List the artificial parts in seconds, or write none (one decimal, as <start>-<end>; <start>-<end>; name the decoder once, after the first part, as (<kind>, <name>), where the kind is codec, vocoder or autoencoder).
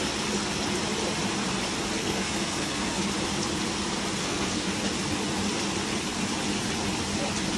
2.0-3.0 (codec, SNAC); 4.2-4.7